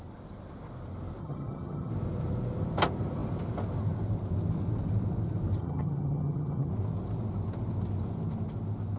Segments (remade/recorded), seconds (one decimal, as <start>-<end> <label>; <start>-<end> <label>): 0.0-1.2 recorded; 1.2-1.9 remade; 1.9-5.6 recorded; 5.6-6.7 remade; 6.7-9.0 recorded